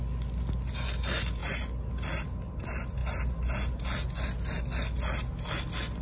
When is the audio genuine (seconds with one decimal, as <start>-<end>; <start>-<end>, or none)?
0.0-6.0